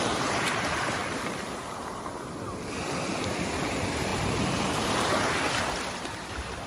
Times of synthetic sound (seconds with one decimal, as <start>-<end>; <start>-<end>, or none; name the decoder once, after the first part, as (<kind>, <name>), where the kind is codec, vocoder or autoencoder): 0.0-1.0 (vocoder, BigVGAN v2); 3.6-6.7